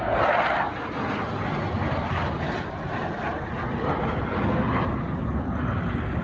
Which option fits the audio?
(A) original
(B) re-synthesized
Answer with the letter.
A